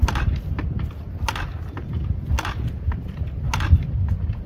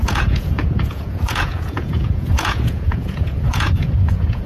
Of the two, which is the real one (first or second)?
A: first